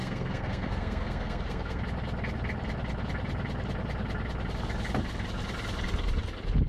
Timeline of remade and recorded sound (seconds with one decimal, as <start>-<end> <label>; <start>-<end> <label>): 0.0-1.8 remade; 1.8-6.7 recorded